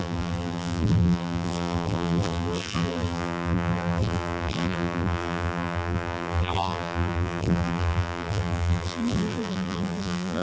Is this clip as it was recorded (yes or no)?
no